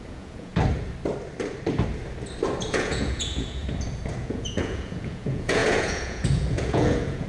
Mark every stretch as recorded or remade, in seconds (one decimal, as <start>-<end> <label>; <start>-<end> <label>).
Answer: 0.0-0.5 remade; 0.5-2.7 recorded; 2.7-3.6 remade; 3.6-4.2 recorded; 4.2-7.3 remade